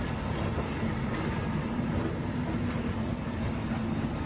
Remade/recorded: recorded